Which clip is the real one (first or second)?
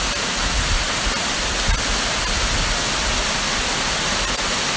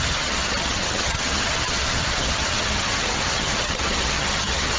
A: first